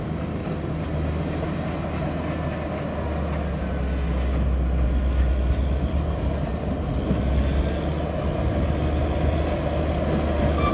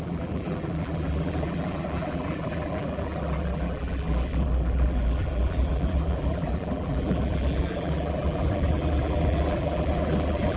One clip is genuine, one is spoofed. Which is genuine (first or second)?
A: first